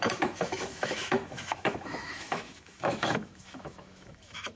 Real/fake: fake